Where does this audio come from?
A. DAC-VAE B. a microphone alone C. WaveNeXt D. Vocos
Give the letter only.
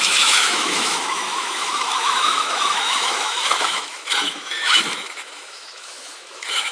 A